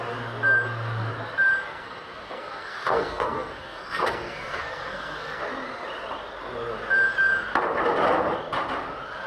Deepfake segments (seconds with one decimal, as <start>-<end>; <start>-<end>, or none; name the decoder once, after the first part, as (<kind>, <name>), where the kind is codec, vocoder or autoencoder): 1.7-5.4 (codec, SNAC)

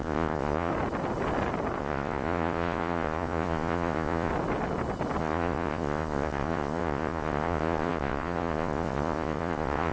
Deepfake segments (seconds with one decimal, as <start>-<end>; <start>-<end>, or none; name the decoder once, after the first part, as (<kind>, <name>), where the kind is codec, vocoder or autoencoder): 0.0-0.7 (vocoder, Vocos); 1.8-4.3; 5.2-9.9

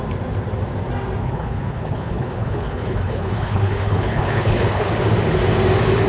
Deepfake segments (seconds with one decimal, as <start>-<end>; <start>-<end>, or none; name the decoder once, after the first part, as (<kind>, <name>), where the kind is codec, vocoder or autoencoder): 1.2-4.9 (codec, HILCodec)

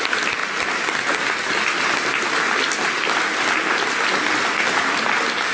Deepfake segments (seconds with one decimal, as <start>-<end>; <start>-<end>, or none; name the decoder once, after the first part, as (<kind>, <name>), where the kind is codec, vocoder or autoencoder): none

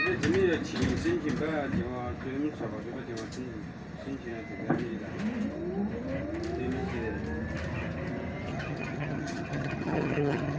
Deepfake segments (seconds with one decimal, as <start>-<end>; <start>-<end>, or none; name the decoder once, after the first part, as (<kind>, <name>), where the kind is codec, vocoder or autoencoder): 8.5-10.6 (vocoder, HiFi-GAN)

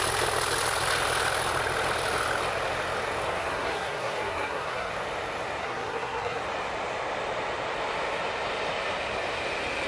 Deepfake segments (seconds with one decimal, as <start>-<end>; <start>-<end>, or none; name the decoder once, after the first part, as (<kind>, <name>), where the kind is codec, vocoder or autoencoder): 3.3-4.9 (codec, SNAC); 5.6-6.4